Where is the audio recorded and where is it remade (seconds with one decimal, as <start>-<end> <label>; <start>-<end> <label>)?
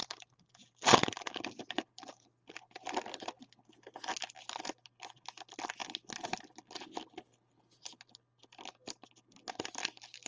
0.0-10.3 recorded